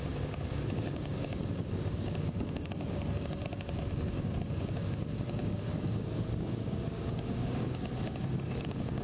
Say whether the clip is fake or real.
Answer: fake